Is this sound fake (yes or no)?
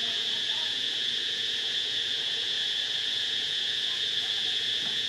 yes